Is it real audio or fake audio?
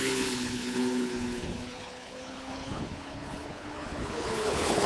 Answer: fake